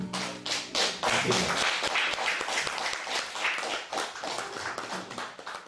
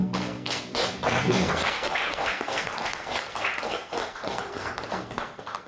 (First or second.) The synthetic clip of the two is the second